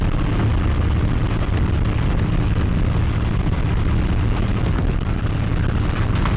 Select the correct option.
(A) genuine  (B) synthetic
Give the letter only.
A